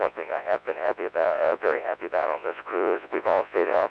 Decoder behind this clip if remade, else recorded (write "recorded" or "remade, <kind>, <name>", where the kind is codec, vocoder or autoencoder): remade, vocoder, Vocos